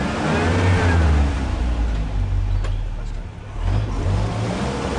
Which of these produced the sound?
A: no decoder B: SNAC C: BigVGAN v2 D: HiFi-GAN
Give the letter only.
A